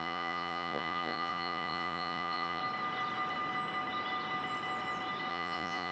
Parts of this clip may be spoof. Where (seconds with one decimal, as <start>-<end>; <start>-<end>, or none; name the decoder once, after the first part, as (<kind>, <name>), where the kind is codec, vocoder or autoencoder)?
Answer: 0.0-2.6 (vocoder, Vocos); 5.3-5.9

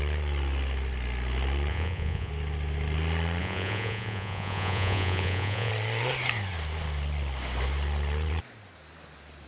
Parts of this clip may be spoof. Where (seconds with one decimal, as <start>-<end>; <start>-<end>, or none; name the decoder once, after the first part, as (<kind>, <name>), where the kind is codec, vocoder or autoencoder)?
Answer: 1.7-2.3 (vocoder, Vocos); 3.4-5.7

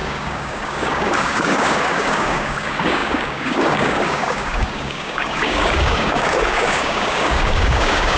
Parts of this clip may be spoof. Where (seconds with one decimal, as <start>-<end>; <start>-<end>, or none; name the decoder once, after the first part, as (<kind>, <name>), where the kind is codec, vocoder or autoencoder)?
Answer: 0.0-8.2 (codec, DAC)

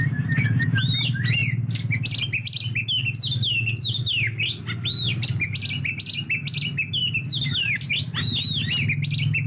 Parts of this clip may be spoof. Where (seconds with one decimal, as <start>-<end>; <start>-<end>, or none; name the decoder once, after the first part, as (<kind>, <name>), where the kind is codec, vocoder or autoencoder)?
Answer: none

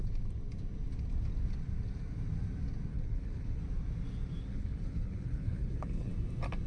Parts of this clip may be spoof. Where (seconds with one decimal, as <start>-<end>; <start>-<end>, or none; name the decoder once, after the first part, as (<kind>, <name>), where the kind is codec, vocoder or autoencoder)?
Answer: 2.9-3.6 (codec, HILCodec); 4.5-6.1

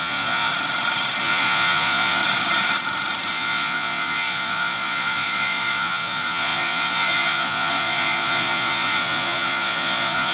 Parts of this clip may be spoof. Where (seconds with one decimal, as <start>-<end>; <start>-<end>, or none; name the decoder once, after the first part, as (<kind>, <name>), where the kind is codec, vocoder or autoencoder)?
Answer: 0.0-0.5 (vocoder, Vocos); 1.2-2.2; 3.3-10.3

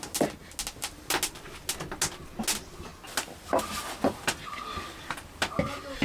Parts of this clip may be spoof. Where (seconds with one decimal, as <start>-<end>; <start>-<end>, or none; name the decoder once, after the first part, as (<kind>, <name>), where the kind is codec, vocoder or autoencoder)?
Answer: none

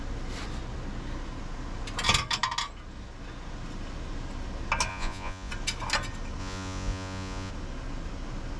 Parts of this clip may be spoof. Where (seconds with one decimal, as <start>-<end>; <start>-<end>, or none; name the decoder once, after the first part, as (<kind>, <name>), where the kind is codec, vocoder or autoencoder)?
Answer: 4.9-5.5 (vocoder, Vocos); 6.4-7.5